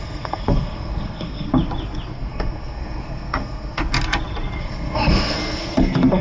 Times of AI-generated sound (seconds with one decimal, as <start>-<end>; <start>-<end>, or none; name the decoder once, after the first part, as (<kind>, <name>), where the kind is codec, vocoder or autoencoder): 0.0-1.5 (codec, SNAC); 2.1-3.8; 4.6-6.2